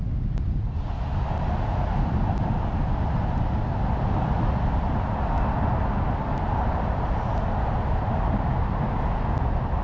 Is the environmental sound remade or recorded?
recorded